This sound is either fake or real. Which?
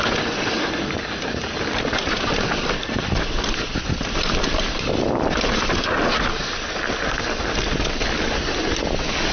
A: real